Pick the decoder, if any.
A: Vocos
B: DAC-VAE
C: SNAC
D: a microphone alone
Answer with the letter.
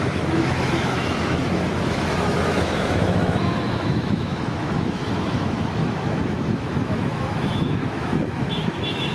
B